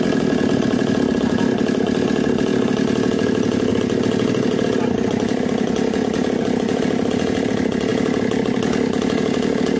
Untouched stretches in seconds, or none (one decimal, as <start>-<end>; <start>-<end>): 0.0-9.8